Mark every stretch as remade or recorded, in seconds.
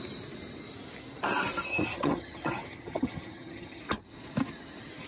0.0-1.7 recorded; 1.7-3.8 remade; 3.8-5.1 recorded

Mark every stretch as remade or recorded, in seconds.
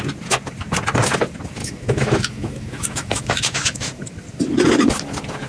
0.0-1.6 recorded; 1.6-3.6 remade; 3.6-5.5 recorded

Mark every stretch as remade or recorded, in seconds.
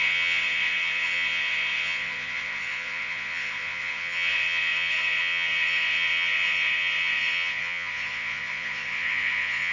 0.0-9.7 remade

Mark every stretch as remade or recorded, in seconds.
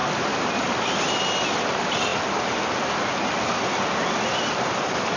0.0-5.2 recorded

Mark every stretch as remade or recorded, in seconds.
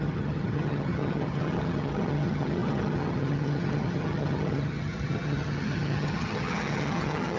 0.0-7.4 remade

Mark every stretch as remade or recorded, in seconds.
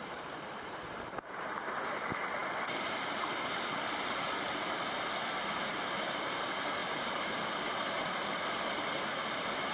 0.0-0.5 remade; 0.5-6.8 recorded; 6.8-8.1 remade; 8.1-9.7 recorded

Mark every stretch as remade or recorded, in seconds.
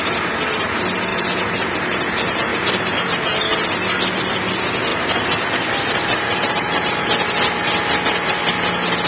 0.0-1.1 recorded; 1.1-1.7 remade; 1.7-2.5 recorded; 2.5-3.1 remade; 3.1-4.9 recorded; 4.9-7.1 remade; 7.1-9.1 recorded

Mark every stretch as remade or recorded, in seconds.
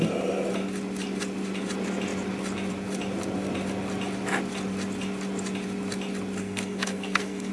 0.0-6.4 recorded; 6.4-7.5 remade